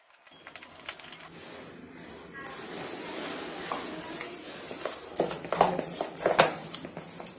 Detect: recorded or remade recorded